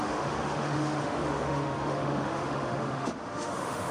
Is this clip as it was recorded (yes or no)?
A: no